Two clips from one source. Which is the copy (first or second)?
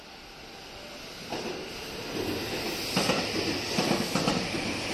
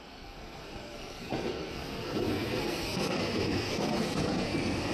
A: second